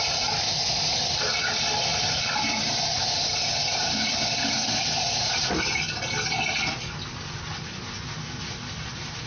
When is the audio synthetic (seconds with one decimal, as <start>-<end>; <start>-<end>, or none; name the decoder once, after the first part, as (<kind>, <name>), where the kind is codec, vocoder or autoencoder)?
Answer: 1.9-5.8 (vocoder, BigVGAN v2)